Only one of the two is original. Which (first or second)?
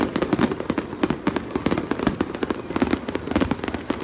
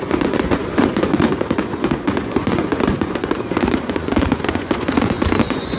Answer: first